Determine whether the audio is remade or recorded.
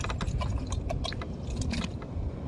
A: recorded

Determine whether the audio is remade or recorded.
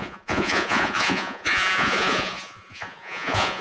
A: remade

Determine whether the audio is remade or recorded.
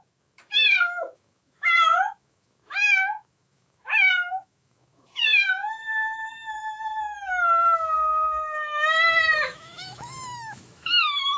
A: remade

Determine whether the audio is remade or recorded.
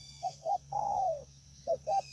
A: remade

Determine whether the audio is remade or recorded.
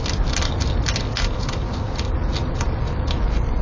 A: recorded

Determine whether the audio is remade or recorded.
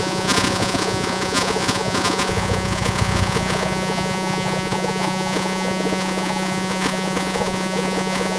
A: remade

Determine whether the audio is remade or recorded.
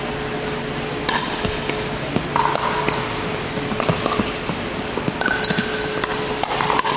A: recorded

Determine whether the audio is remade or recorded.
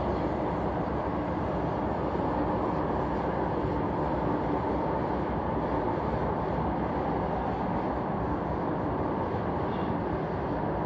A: recorded